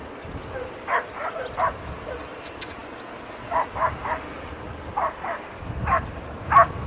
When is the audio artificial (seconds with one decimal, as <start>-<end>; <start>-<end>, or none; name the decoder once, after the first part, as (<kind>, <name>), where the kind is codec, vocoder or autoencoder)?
none